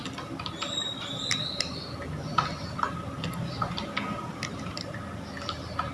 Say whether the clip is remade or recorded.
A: recorded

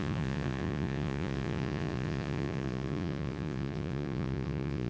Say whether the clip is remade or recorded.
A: remade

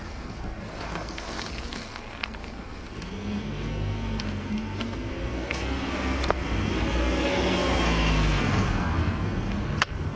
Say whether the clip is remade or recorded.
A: remade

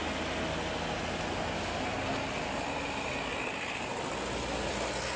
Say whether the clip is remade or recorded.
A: recorded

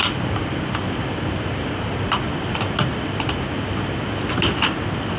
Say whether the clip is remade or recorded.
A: recorded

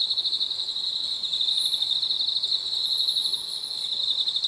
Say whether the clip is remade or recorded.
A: remade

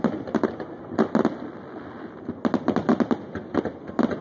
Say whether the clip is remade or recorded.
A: recorded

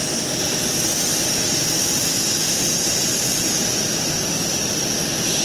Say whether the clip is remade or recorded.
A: remade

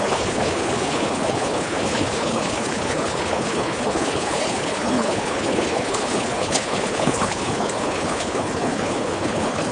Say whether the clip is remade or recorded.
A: remade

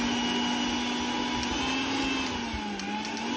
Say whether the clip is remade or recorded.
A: recorded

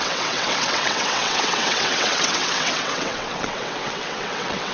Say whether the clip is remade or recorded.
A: remade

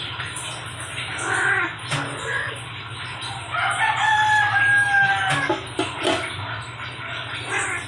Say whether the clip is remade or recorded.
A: recorded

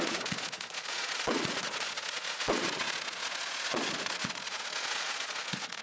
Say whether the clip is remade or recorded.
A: remade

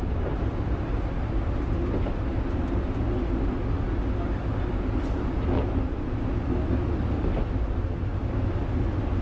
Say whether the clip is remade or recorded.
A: recorded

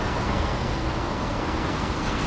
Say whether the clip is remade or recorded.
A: remade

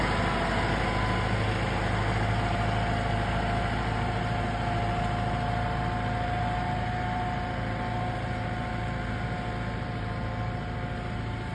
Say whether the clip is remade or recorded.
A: recorded